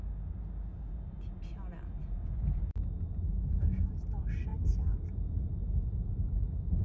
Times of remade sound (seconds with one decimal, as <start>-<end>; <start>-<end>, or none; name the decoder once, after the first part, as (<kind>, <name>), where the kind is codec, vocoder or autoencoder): 2.0-2.6 (vocoder, Vocos)